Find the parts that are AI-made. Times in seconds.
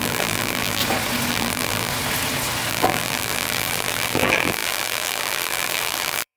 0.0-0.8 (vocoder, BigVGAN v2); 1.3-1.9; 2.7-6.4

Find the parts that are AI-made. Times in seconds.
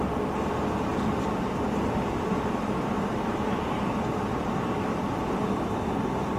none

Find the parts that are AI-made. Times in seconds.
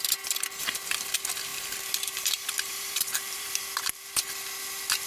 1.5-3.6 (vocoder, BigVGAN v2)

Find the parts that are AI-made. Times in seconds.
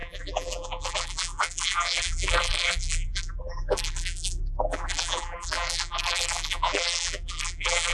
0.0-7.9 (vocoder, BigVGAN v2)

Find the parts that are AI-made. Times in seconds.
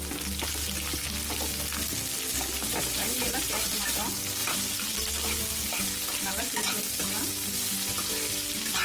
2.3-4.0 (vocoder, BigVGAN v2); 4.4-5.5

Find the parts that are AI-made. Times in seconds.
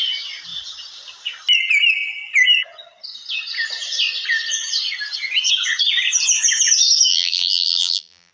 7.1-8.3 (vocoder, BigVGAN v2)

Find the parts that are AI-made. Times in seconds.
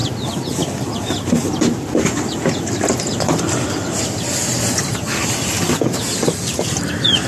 none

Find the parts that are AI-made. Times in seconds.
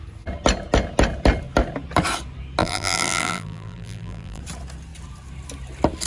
2.6-4.4 (vocoder, BigVGAN v2)